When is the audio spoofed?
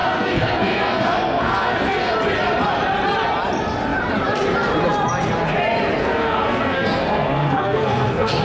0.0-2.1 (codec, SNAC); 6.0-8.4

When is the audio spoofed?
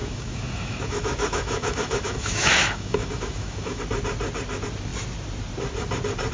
0.0-3.8 (autoencoder, DAC-VAE)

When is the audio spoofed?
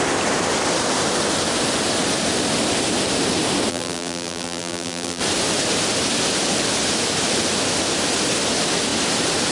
3.7-5.2 (vocoder, BigVGAN v2)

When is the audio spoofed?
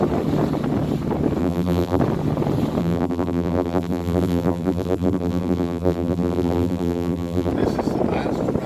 1.4-2.0 (vocoder, BigVGAN v2); 2.8-7.5